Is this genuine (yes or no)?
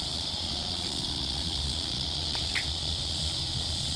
no